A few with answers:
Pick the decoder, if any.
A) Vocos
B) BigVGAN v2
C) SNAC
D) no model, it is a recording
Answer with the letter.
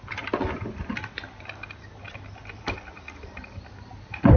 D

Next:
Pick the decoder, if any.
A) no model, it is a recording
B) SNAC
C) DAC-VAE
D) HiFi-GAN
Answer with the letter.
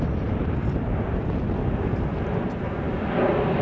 A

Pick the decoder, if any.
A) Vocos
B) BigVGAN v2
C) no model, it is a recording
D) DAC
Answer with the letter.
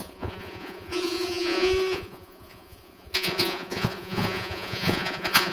A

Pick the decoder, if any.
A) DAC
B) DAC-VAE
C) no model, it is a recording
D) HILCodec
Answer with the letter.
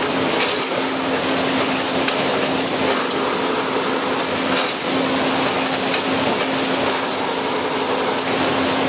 C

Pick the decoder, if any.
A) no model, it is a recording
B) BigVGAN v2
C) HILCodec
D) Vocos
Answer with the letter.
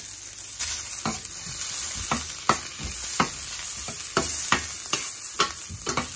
A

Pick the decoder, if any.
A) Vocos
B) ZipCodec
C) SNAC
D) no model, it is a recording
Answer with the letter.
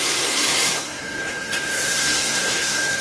C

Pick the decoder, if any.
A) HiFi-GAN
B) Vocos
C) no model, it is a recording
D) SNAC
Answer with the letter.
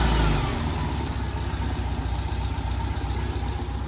C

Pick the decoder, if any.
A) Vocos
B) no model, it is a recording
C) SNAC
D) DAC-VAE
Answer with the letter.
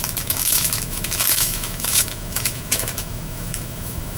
D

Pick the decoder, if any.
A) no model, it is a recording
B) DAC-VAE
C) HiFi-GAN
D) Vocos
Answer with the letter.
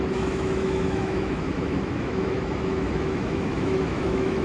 B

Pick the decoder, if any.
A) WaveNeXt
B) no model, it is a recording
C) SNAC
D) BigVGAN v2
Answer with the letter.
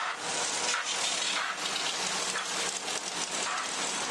B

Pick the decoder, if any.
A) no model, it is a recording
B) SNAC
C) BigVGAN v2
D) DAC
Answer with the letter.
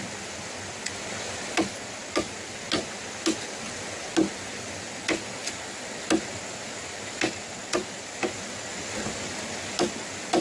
A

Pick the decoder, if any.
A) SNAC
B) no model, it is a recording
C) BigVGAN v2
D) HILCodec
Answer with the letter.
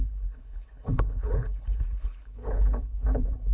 D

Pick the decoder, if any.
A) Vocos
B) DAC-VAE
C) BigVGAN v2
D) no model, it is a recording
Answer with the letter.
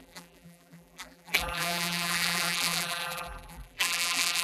C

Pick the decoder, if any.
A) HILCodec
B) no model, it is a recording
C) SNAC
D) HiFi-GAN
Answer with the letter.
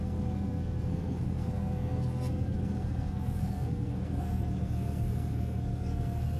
C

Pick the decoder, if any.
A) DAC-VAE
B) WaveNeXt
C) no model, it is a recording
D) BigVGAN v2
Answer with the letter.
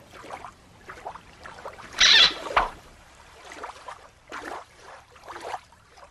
D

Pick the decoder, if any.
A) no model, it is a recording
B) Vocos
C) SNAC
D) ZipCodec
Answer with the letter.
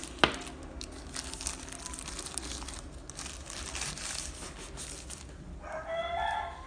A